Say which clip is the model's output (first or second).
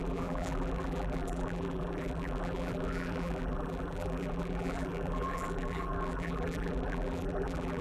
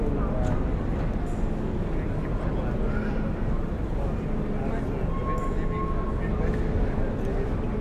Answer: first